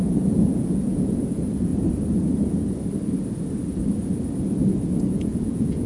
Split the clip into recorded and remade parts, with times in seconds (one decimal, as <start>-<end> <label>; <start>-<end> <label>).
0.0-1.7 remade; 1.7-5.0 recorded; 5.0-5.9 remade